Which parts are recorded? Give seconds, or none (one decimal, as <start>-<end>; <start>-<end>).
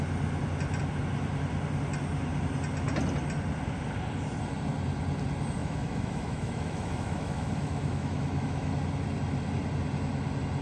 0.0-5.6; 8.8-10.6